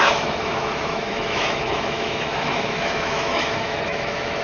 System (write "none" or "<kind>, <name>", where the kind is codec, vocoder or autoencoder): autoencoder, DAC-VAE